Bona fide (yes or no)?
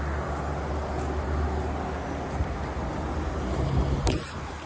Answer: yes